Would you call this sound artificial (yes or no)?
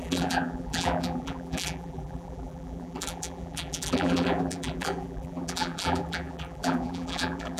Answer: yes